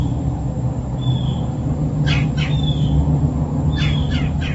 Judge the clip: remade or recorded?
recorded